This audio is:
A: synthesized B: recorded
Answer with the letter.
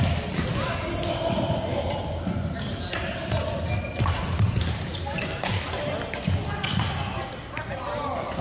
B